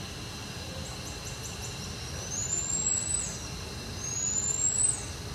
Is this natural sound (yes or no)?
yes